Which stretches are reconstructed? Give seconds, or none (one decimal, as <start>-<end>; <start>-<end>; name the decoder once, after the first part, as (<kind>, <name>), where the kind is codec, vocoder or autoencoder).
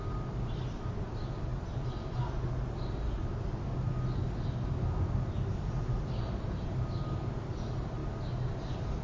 none